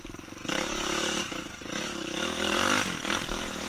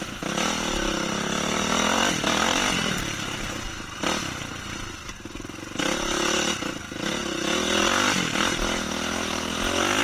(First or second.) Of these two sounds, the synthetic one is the first